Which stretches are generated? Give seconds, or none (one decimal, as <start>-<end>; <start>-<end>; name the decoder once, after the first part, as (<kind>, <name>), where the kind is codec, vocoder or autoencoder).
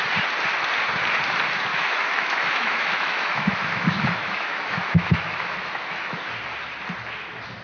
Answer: 1.7-6.3 (autoencoder, DAC-VAE)